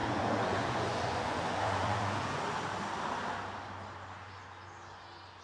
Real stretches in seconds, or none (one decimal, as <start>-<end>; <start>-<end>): 2.4-5.4